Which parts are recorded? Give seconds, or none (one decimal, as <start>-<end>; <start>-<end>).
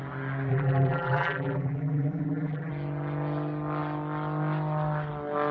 0.0-0.5; 2.7-5.5